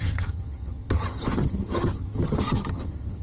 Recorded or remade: remade